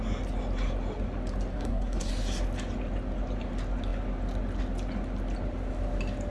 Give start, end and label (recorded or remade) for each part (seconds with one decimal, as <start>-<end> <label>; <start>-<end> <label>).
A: 0.0-1.5 recorded; 1.5-2.1 remade; 2.1-6.3 recorded